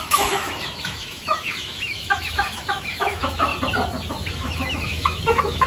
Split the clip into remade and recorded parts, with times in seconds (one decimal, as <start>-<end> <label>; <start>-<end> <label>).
0.0-3.5 remade; 3.5-4.3 recorded; 4.3-5.7 remade